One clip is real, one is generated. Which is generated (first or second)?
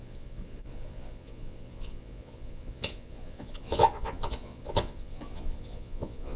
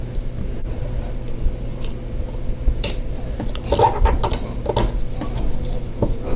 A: first